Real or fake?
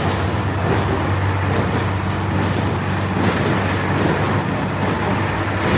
real